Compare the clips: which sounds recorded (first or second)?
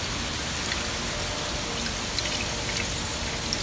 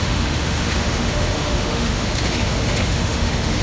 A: first